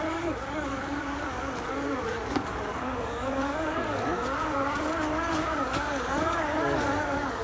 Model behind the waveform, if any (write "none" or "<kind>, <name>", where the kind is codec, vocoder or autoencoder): codec, DAC